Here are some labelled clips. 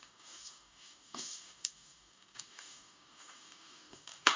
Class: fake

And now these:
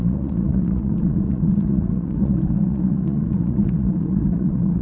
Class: fake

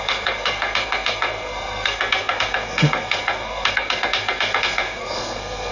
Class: fake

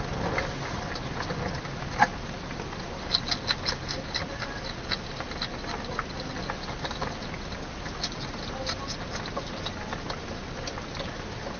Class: real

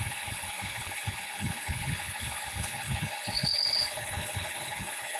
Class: fake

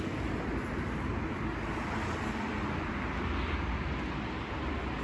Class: real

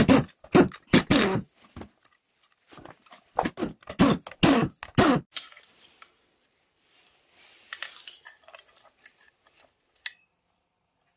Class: real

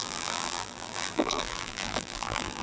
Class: fake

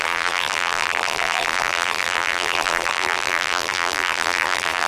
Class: fake